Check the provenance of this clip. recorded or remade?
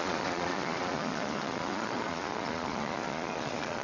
remade